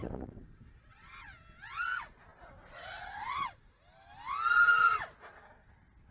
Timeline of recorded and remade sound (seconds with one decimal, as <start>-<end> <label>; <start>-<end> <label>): 0.0-0.7 remade; 0.7-6.1 recorded